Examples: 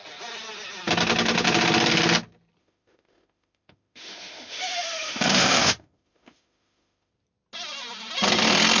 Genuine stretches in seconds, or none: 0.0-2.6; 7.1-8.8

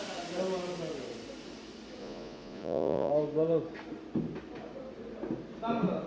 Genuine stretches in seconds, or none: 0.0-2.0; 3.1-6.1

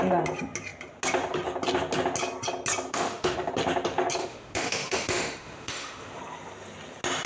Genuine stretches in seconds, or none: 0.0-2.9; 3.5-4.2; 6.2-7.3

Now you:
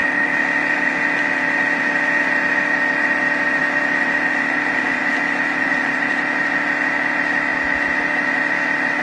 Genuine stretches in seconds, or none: none

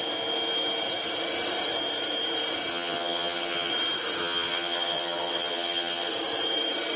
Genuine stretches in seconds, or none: 0.0-2.7; 3.7-4.2; 6.1-7.0

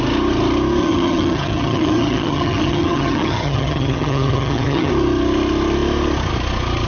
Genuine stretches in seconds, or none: 0.0-0.8; 4.9-6.9